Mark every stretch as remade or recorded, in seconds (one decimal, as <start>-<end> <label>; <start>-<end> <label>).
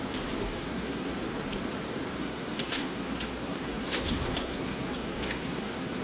0.0-0.4 recorded; 0.4-1.1 remade; 1.1-2.2 recorded; 2.2-6.0 remade